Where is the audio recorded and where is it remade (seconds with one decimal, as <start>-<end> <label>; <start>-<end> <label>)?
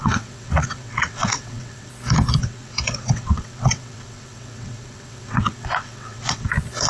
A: 0.0-1.9 remade; 1.9-2.4 recorded; 2.4-6.5 remade; 6.5-6.9 recorded